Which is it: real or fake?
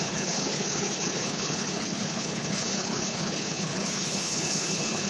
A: fake